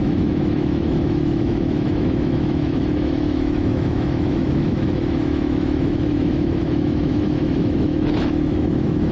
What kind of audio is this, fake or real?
fake